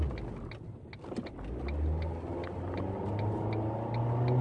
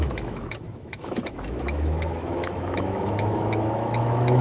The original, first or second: first